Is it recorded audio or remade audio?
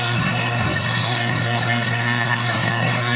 remade